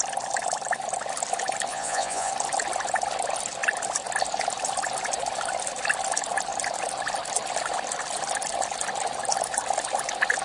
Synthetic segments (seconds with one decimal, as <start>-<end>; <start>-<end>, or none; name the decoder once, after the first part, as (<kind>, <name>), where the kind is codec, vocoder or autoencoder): 1.7-2.3 (vocoder, Vocos)